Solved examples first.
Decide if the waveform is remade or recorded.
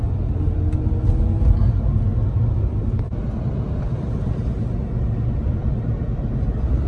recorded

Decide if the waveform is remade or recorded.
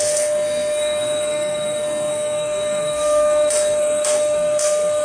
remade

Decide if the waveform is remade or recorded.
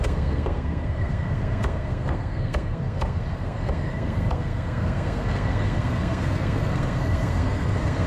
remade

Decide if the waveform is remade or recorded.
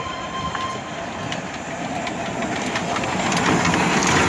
recorded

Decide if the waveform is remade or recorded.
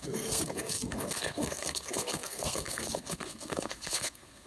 remade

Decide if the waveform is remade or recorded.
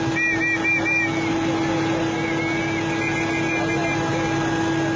recorded